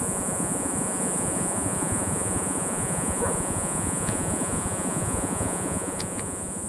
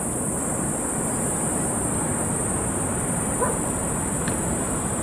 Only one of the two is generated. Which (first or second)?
first